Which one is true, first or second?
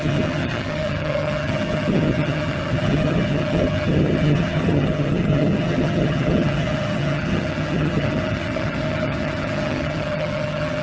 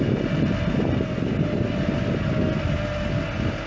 second